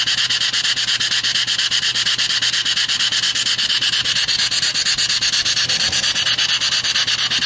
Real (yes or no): yes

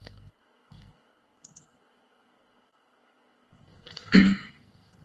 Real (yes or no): no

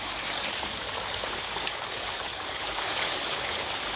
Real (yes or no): no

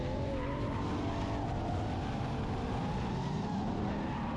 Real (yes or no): yes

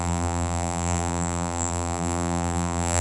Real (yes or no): no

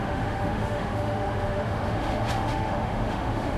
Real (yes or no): no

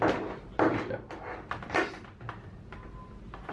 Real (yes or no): yes